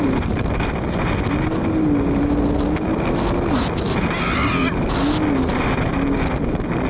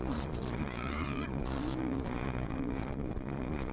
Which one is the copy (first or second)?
second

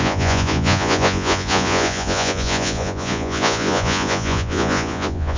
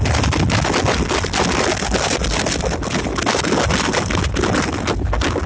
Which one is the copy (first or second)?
first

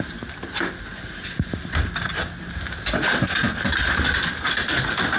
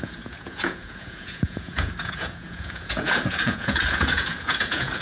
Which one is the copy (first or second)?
second